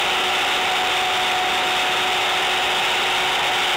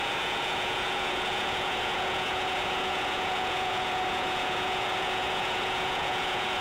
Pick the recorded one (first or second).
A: first